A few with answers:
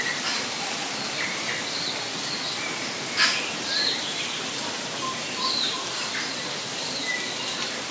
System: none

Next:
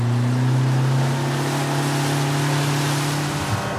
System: none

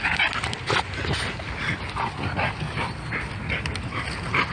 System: none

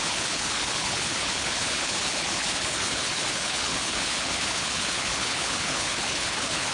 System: codec, HILCodec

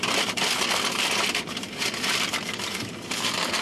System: none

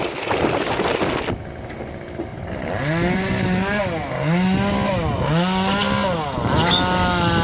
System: none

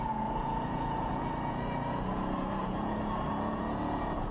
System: vocoder, Vocos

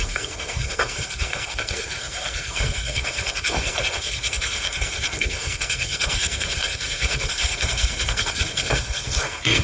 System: codec, SNAC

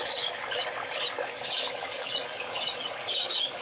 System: codec, DAC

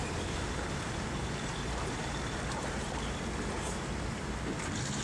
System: vocoder, BigVGAN v2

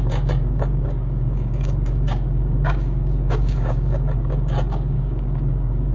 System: codec, DAC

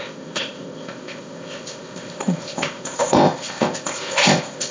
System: codec, ZipCodec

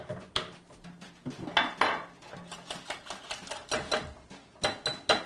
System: none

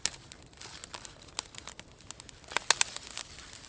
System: none